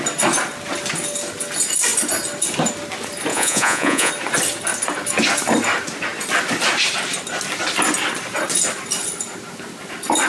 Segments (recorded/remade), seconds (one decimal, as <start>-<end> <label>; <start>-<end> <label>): 0.0-3.3 recorded; 3.3-4.1 remade; 4.1-10.3 recorded